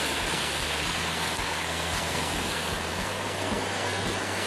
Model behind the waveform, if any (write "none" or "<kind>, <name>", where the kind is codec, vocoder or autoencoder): codec, SNAC